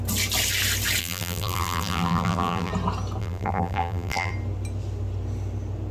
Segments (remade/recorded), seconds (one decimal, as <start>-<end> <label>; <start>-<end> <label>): 0.0-1.0 recorded; 1.0-2.7 remade; 2.7-3.2 recorded; 3.2-4.3 remade; 4.3-5.9 recorded